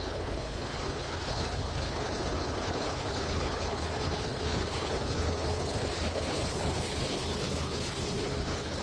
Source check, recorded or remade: remade